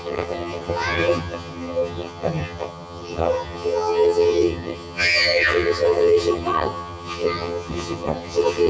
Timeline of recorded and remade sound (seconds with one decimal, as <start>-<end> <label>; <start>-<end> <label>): 0.0-8.7 remade